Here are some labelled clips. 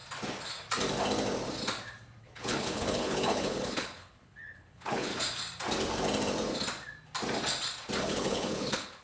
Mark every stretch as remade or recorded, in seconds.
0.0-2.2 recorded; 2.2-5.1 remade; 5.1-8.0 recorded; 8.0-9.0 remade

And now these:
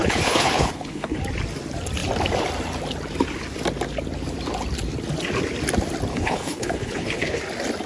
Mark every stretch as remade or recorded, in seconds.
0.0-1.2 remade; 1.2-6.1 recorded; 6.1-7.4 remade; 7.4-7.9 recorded

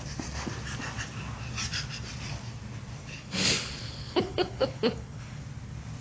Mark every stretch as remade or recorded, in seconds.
0.0-3.0 recorded; 3.0-5.4 remade; 5.4-6.0 recorded

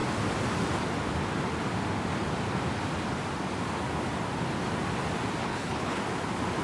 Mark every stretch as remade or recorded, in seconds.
0.0-5.4 recorded; 5.4-6.0 remade; 6.0-6.6 recorded

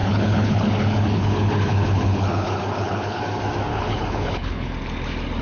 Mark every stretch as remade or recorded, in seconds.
0.0-3.2 remade; 3.2-3.7 recorded; 3.7-4.7 remade; 4.7-5.4 recorded

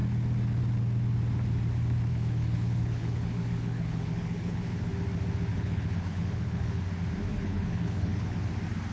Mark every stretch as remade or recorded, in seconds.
0.0-2.1 recorded; 2.1-4.9 remade; 4.9-5.5 recorded; 5.5-6.8 remade; 6.8-7.3 recorded; 7.3-8.5 remade; 8.5-8.9 recorded

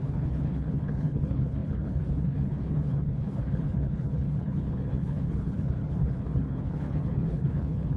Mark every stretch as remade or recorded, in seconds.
0.0-8.0 remade

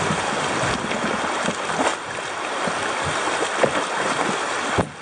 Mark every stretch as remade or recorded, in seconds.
0.0-5.0 recorded